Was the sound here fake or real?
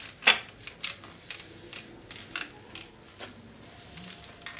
real